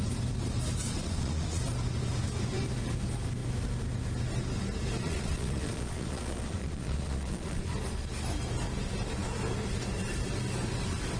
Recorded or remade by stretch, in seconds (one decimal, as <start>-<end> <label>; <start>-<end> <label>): 0.0-1.0 recorded; 1.0-1.6 remade; 1.6-5.0 recorded; 5.0-7.6 remade; 7.6-11.2 recorded